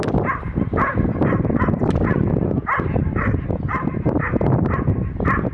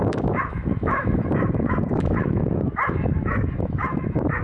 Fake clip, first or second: second